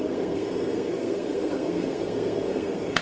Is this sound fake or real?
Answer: fake